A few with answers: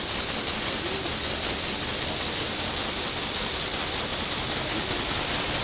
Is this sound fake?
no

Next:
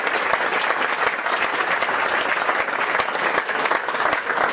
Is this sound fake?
no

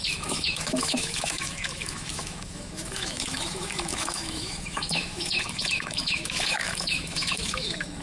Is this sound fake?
yes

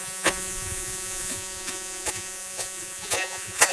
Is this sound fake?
yes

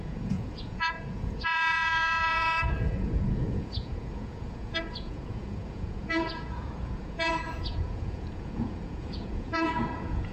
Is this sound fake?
yes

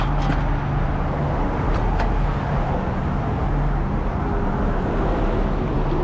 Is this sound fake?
no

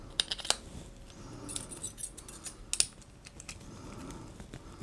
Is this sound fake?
no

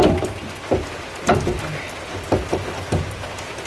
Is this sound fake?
no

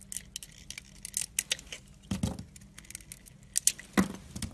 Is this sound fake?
no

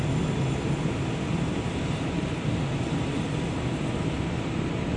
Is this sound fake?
no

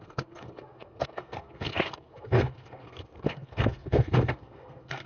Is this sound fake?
yes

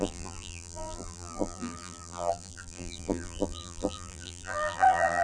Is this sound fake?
yes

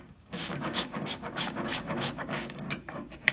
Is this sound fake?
yes